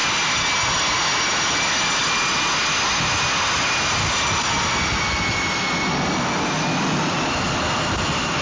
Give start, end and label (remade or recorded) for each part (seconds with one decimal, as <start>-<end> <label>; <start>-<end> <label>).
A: 0.0-8.4 recorded